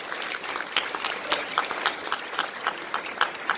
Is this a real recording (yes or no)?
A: yes